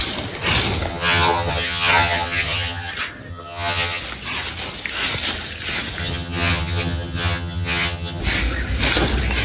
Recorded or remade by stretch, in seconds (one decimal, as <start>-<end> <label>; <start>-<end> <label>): 0.0-0.9 recorded; 0.9-2.9 remade; 2.9-3.3 recorded; 3.3-4.0 remade; 4.0-6.0 recorded; 6.0-8.2 remade; 8.2-9.4 recorded

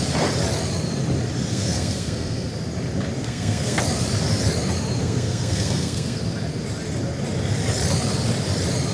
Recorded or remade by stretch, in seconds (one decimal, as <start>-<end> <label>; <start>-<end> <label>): 0.0-1.5 recorded; 1.5-2.5 remade; 2.5-3.2 recorded; 3.2-3.8 remade; 3.8-5.0 recorded; 5.0-6.2 remade; 6.2-8.9 recorded

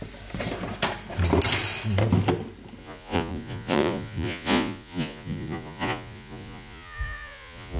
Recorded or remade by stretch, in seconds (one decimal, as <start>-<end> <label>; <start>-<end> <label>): 0.0-2.8 recorded; 2.8-7.8 remade